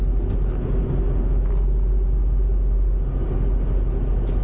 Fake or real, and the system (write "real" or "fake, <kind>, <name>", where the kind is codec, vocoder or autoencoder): real